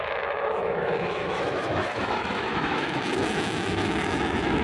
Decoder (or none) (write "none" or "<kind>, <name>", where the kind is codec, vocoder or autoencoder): autoencoder, DAC-VAE